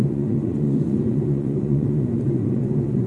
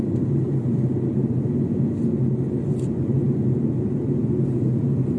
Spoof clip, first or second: first